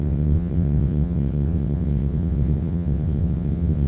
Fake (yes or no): yes